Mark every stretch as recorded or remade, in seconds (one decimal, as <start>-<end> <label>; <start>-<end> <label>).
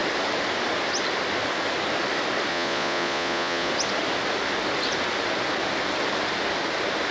0.0-2.5 recorded; 2.5-3.7 remade; 3.7-7.1 recorded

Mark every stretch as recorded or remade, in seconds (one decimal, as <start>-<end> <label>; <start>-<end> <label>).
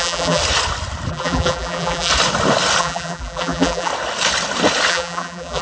0.0-0.4 remade; 0.4-1.1 recorded; 1.1-2.1 remade; 2.1-2.8 recorded; 2.8-3.9 remade; 3.9-4.9 recorded; 4.9-5.6 remade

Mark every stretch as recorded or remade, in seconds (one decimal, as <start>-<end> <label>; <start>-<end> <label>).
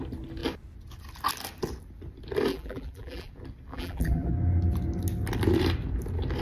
0.0-2.5 recorded; 2.5-3.3 remade; 3.3-3.7 recorded; 3.7-4.3 remade; 4.3-6.4 recorded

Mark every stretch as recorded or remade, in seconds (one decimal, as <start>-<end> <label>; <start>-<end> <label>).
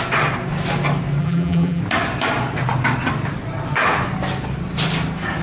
0.0-1.2 recorded; 1.2-1.8 remade; 1.8-5.4 recorded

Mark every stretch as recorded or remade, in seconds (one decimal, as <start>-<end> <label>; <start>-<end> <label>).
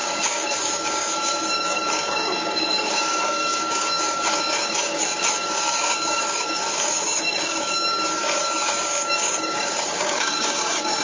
0.0-11.0 remade